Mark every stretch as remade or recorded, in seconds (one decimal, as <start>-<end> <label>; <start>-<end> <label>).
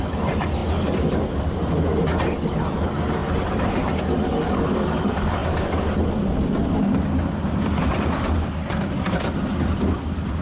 0.0-10.4 recorded